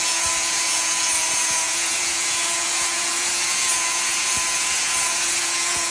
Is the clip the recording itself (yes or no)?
no